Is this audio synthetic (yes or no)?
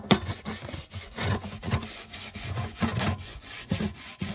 yes